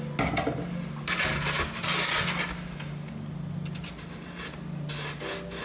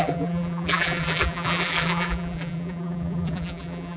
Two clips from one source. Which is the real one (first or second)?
first